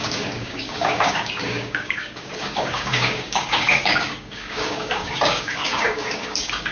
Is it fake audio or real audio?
fake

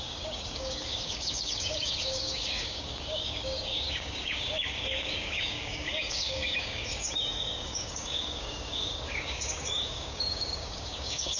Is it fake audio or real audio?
fake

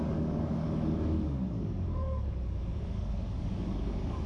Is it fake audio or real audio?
fake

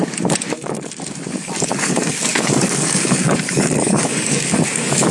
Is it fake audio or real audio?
fake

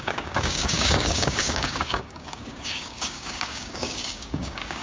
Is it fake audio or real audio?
fake